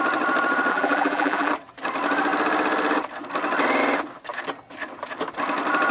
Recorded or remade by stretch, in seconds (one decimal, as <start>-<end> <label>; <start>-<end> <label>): 0.0-0.7 recorded; 0.7-1.5 remade; 1.5-5.9 recorded